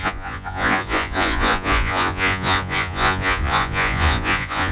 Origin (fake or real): fake